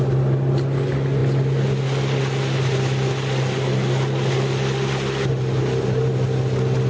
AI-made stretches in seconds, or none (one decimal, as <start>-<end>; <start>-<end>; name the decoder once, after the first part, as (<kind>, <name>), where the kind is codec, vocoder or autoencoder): none

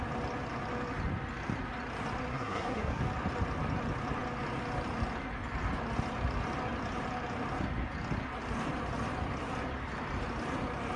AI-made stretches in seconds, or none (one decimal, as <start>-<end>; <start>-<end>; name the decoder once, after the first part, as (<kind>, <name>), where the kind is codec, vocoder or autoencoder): 2.3-3.0 (codec, SNAC)

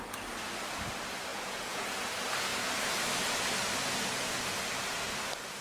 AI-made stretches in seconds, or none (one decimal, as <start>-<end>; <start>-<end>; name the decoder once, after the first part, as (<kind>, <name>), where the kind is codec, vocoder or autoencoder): 1.3-2.1 (vocoder, Vocos)